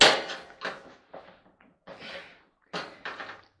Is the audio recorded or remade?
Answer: recorded